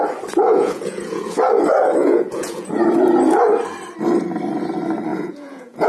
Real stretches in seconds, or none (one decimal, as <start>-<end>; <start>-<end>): 0.0-0.5; 1.4-2.0; 2.7-5.1